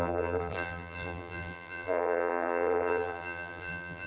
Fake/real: fake